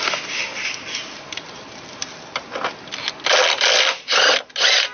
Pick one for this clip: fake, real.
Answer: real